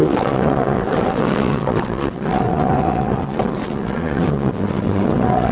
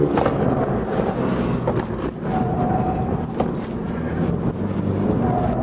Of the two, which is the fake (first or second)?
first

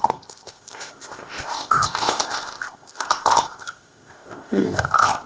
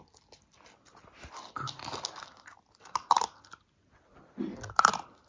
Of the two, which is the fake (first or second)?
first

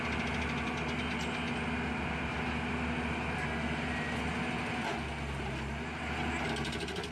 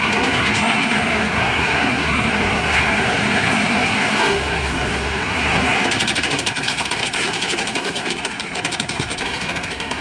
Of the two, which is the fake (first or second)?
second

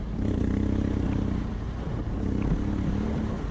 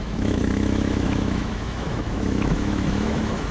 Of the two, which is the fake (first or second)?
second